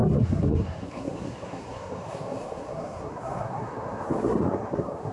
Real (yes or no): no